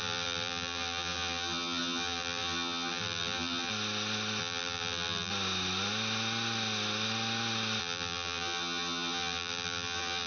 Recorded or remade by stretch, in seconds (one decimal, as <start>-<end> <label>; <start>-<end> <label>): 0.0-3.7 remade; 3.7-4.4 recorded; 4.4-5.3 remade; 5.3-7.8 recorded; 7.8-10.3 remade